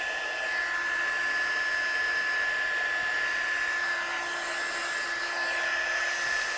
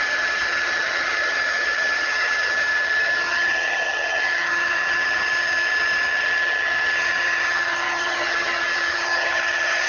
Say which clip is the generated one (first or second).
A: second